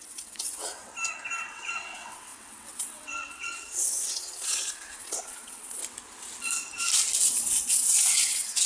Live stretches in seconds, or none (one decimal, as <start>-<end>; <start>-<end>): 0.9-1.5; 5.8-7.2